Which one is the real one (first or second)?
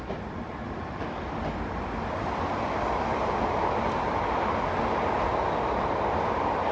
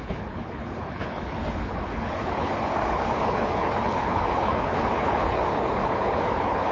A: first